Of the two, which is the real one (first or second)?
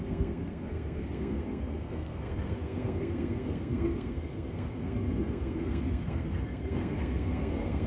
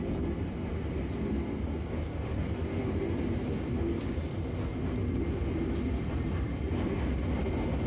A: second